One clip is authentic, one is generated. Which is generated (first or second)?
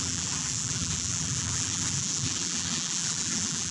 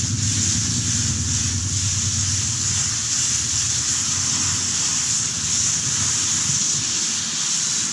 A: first